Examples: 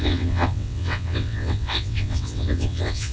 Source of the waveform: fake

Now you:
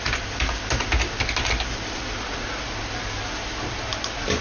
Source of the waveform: real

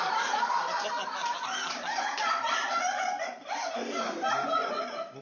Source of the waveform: fake